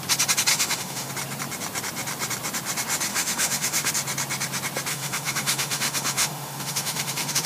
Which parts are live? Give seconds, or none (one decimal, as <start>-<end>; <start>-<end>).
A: 0.0-0.5; 1.1-3.1; 3.9-4.9